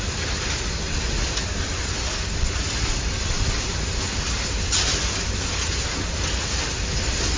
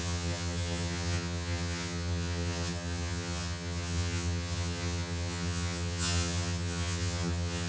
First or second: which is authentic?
first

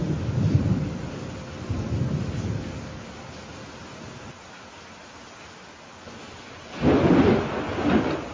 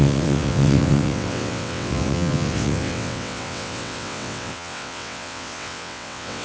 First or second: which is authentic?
first